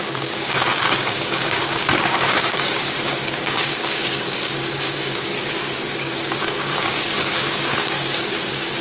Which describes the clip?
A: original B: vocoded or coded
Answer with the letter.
B